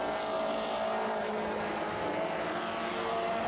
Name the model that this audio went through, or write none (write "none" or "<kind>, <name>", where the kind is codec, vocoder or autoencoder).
none